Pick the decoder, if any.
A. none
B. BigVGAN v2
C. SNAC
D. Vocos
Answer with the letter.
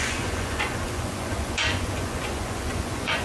D